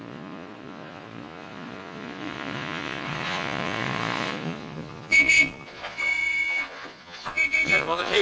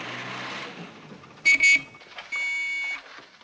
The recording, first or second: second